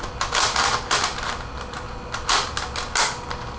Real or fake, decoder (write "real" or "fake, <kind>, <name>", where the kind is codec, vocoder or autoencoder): real